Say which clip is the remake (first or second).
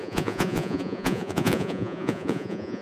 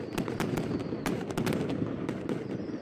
first